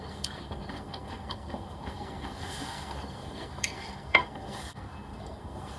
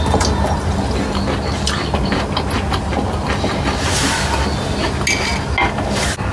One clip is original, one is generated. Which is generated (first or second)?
first